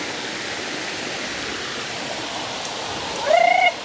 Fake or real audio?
real